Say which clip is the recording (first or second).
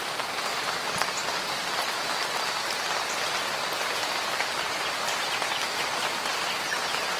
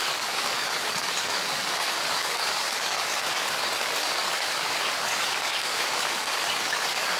first